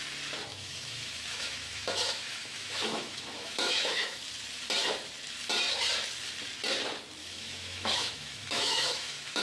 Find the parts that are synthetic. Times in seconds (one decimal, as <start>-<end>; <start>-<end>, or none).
0.5-4.2; 7.2-9.4